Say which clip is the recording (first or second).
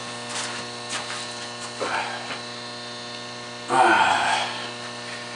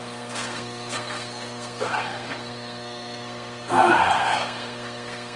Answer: first